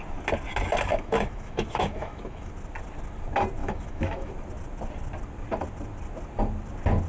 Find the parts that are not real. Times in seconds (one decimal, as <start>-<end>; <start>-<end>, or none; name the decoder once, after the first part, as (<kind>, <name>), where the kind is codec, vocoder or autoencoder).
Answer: 0.9-2.5 (autoencoder, DAC-VAE); 3.6-4.3